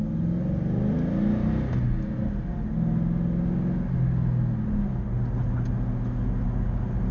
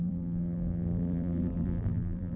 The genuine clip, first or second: first